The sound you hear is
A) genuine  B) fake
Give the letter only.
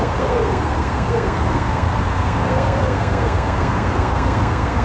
B